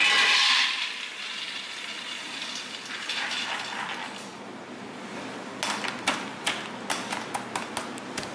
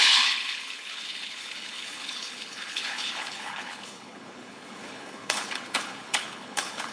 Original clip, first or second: first